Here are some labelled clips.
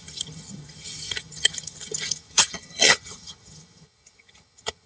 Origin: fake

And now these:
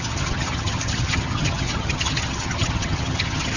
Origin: fake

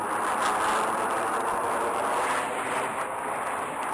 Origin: real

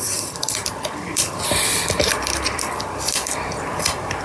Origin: fake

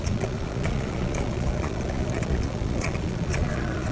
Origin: fake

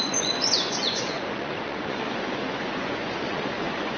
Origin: fake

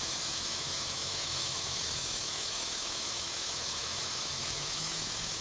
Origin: fake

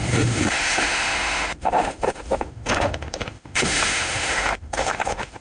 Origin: fake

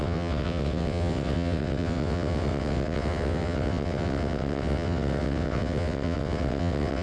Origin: fake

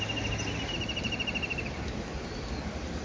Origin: real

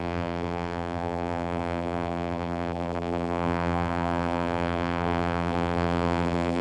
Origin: fake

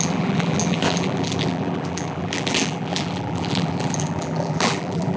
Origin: fake